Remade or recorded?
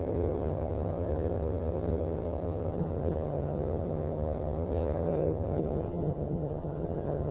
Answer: remade